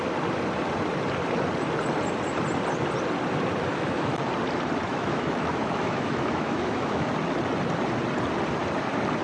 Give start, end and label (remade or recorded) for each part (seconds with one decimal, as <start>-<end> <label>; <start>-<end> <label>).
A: 0.0-3.7 recorded; 3.7-4.3 remade; 4.3-4.9 recorded; 4.9-7.1 remade; 7.1-9.2 recorded